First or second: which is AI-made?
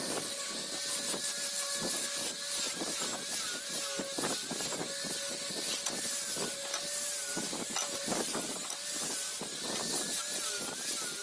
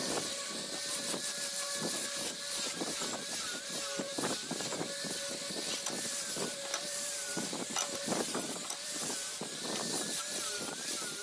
second